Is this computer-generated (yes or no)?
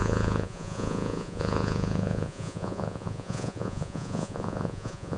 yes